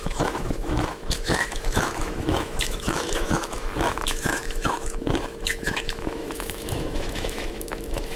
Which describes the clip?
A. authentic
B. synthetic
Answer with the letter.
B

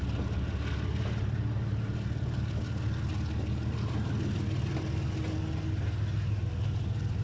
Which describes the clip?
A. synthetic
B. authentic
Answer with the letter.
B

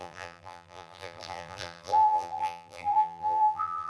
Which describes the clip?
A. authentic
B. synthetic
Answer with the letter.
B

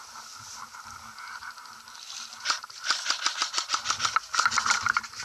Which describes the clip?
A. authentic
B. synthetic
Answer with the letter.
B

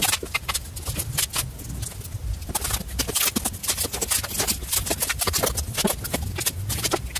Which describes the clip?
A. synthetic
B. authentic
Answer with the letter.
B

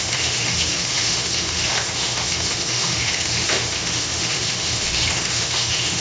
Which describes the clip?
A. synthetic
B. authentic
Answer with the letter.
A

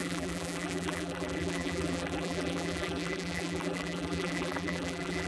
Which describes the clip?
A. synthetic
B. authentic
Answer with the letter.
A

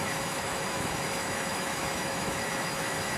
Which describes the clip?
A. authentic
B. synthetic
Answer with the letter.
B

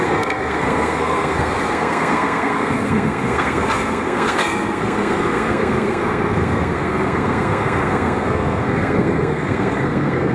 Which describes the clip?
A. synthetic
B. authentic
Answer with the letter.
A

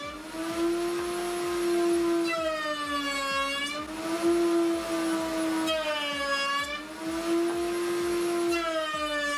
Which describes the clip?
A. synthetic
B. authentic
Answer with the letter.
B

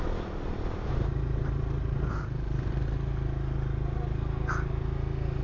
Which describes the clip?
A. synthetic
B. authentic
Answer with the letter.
B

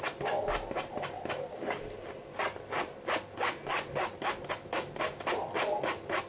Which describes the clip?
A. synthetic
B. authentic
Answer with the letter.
B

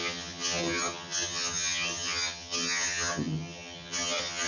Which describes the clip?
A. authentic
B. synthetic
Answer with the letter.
B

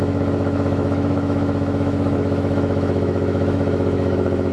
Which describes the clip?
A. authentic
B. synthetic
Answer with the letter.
B